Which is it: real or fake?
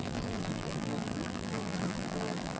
fake